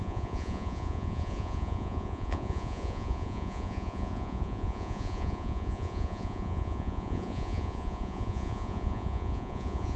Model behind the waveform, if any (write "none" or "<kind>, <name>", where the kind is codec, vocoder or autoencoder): vocoder, Vocos